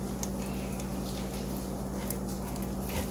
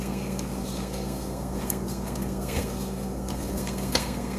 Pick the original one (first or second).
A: first